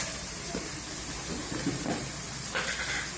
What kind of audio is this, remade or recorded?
recorded